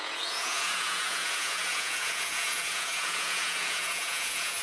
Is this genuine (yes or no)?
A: no